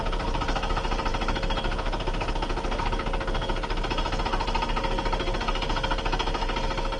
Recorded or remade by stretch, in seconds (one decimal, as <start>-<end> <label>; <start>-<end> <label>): 0.0-7.0 recorded